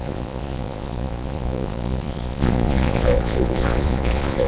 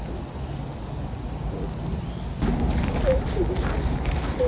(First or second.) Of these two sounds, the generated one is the first